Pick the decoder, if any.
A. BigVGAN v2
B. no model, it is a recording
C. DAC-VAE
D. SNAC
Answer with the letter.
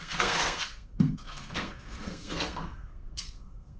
D